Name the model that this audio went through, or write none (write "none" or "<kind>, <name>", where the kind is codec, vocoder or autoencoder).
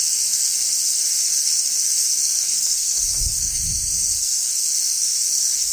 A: codec, SNAC